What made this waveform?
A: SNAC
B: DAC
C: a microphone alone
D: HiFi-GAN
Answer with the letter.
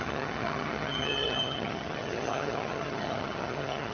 D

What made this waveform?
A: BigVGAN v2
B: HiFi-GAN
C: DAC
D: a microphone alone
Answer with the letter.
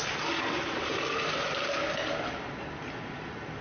D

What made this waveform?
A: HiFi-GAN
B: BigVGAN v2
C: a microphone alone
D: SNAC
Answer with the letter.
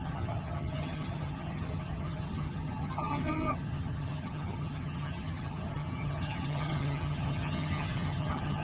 A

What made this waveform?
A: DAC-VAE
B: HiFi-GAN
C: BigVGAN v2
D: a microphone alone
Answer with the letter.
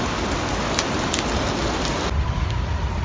D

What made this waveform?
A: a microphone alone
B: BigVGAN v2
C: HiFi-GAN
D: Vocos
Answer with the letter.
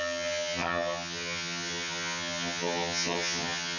C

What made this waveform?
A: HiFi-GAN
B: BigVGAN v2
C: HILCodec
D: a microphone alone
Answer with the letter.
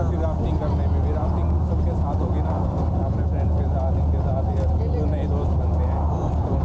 D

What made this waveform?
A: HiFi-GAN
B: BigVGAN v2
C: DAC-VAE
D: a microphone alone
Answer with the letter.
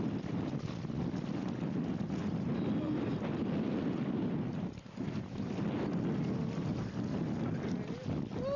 D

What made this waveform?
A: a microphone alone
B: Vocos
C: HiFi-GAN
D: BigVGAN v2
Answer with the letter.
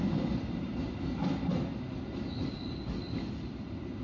A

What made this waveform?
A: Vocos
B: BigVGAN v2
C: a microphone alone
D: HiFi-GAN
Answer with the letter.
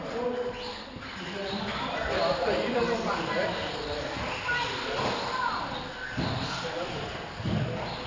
C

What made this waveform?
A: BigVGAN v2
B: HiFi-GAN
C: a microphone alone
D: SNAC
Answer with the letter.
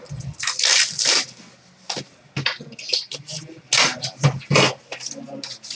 C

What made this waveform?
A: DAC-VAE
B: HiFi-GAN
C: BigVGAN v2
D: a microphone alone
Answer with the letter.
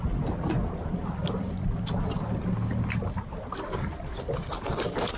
D